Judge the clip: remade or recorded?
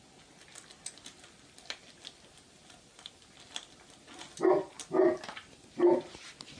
recorded